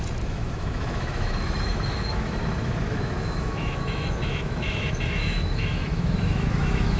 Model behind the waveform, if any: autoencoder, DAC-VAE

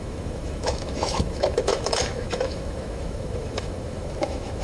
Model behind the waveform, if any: autoencoder, DAC-VAE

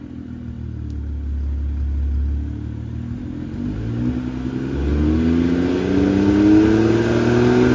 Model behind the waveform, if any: none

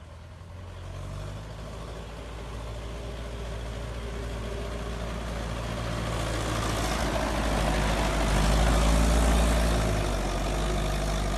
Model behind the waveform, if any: none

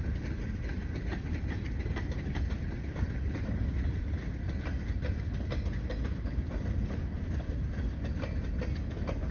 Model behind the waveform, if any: none